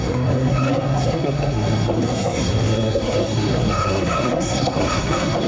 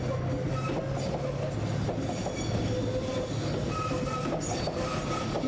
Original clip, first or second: second